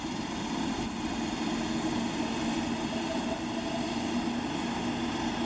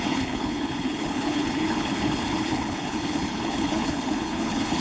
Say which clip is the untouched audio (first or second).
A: first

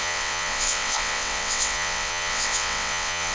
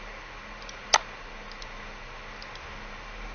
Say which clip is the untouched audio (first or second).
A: second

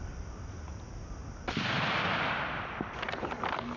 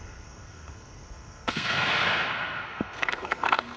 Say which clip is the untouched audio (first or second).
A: first